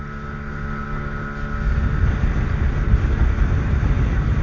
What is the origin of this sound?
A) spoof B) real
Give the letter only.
B